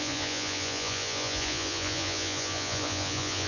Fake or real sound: fake